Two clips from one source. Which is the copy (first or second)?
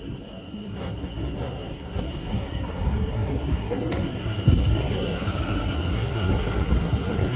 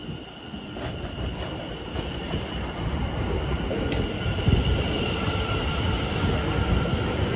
first